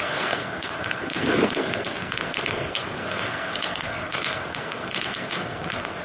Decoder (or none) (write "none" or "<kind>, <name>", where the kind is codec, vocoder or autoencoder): codec, SNAC